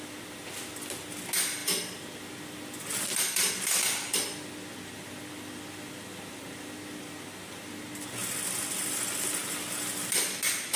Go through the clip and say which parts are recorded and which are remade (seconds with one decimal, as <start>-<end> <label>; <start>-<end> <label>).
0.0-10.8 recorded